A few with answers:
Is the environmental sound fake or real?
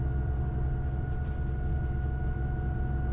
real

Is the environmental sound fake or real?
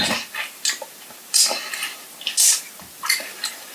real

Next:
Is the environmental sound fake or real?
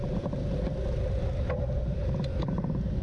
real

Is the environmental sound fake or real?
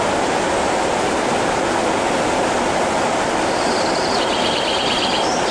real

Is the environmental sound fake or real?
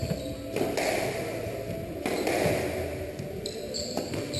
real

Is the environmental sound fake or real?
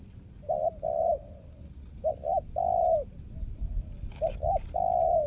real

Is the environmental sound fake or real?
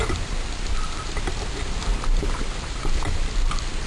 fake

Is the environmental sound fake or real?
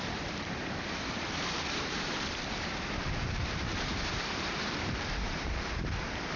fake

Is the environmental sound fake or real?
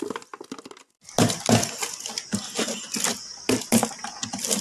real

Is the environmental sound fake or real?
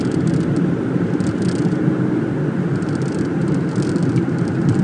real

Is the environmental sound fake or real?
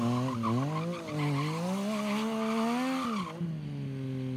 real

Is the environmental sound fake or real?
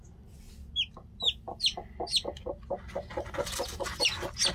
real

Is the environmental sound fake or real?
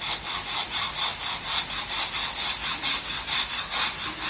real